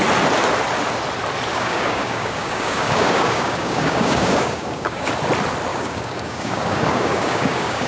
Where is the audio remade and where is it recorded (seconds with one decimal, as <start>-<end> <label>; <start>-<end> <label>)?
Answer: 0.0-1.5 recorded; 1.5-5.1 remade; 5.1-5.7 recorded; 5.7-7.9 remade